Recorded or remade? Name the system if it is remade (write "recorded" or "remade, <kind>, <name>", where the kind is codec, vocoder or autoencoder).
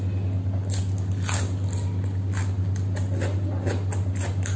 recorded